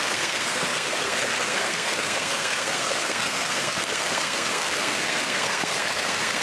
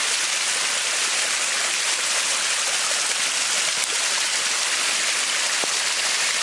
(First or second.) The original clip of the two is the second